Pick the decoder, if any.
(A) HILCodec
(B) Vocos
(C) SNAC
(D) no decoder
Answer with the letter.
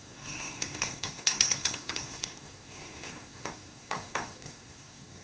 C